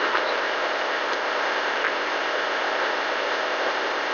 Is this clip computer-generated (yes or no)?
yes